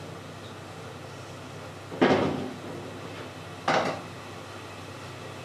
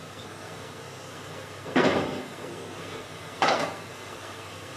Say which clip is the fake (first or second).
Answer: second